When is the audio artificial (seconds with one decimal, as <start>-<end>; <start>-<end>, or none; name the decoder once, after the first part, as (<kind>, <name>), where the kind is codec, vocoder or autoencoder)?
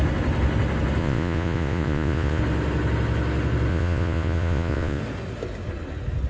1.0-2.4 (vocoder, Vocos); 3.7-5.0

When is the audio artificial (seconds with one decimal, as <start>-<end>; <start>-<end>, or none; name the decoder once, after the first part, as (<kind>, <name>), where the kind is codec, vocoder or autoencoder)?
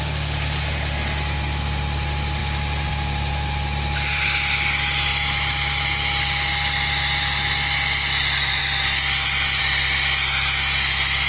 none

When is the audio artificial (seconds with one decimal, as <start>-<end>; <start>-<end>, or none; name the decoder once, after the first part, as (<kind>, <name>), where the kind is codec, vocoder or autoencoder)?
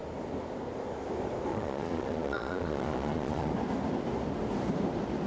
1.5-3.5 (vocoder, Vocos)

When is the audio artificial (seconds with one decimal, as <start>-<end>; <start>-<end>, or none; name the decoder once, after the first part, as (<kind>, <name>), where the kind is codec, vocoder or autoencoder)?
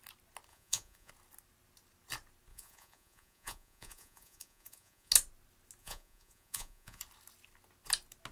0.5-1.1 (vocoder, Vocos); 2.5-5.1; 5.8-7.0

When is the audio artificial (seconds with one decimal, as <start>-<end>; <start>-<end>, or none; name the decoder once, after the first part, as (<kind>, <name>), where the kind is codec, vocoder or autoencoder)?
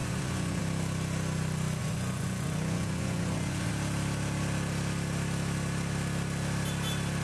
0.0-0.6 (vocoder, Vocos); 1.8-3.7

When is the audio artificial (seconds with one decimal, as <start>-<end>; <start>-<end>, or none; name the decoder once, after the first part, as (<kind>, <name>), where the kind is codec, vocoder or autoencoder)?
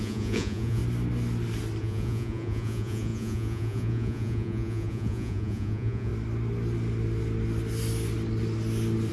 0.0-0.8 (vocoder, Vocos); 1.8-6.1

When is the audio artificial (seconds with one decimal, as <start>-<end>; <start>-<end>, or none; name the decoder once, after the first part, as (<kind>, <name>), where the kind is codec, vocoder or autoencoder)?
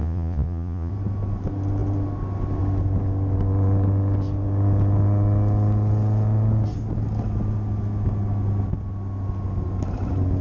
0.0-0.9 (vocoder, Vocos)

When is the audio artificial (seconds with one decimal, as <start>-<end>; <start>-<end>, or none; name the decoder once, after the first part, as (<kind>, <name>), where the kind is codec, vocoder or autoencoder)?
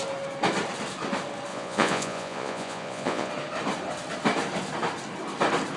1.5-3.3 (vocoder, Vocos)